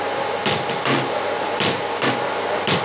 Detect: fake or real real